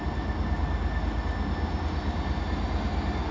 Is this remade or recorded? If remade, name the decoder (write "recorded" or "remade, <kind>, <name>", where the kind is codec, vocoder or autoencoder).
recorded